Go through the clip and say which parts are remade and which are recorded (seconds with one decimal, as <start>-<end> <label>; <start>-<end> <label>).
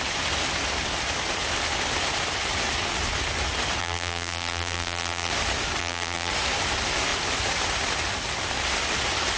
0.0-3.8 recorded; 3.8-5.3 remade; 5.3-5.8 recorded; 5.8-6.3 remade; 6.3-9.4 recorded